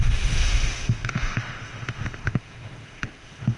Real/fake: fake